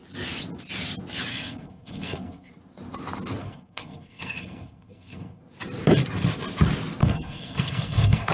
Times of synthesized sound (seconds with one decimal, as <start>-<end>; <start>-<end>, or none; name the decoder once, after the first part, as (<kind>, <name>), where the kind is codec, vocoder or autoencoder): 1.3-2.5 (codec, SNAC); 3.4-5.4; 7.0-8.3